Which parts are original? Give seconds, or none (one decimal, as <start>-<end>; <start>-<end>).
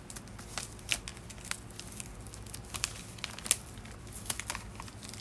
0.0-5.2